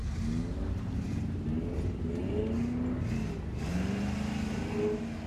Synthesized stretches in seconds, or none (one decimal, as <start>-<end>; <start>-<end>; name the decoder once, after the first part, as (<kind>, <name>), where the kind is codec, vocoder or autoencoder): none

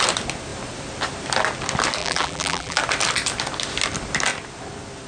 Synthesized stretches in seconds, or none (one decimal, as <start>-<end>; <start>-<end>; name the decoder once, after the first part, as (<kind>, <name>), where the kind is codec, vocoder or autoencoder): 2.0-2.8 (vocoder, BigVGAN v2)